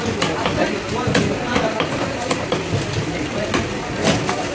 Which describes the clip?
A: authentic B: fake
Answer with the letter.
A